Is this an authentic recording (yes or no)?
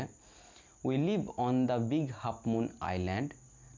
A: yes